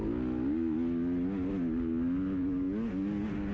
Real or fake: real